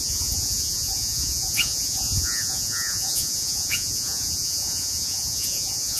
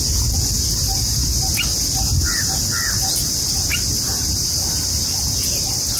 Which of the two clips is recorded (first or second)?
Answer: second